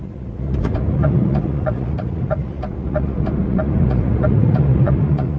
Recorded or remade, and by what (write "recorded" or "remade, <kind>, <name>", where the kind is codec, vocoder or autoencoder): remade, vocoder, Vocos